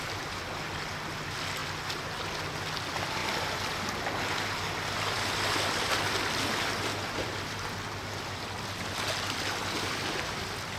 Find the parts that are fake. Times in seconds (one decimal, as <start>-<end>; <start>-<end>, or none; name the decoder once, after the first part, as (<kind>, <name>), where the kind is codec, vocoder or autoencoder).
none